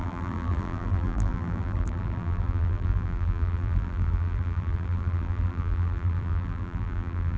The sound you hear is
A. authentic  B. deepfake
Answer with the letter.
B